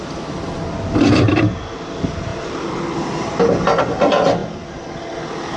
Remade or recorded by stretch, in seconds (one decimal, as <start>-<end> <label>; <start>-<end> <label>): 0.0-5.6 recorded